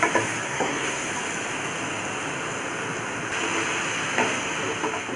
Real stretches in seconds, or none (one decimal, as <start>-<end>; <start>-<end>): 0.0-0.4; 1.1-5.2

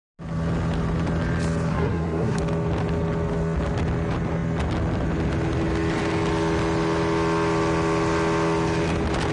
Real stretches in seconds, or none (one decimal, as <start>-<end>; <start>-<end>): 0.0-1.7; 2.4-9.3

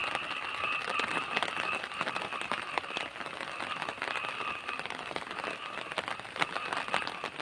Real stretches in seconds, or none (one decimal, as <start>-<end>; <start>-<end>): 0.0-7.4

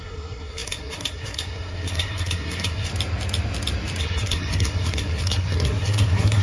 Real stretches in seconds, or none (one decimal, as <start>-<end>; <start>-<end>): 2.9-4.0

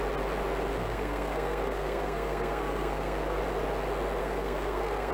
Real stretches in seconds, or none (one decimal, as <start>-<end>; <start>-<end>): 0.0-0.7; 3.4-4.2

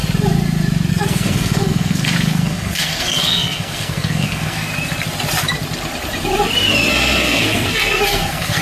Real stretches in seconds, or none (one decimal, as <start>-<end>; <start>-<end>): 0.0-0.9; 4.7-6.9

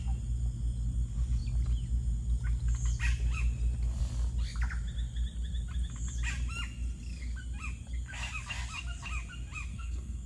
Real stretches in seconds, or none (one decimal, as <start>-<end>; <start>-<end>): 0.0-9.7

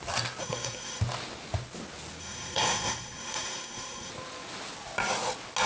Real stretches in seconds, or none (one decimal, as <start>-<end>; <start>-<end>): 0.0-0.4; 1.0-2.2; 4.1-5.7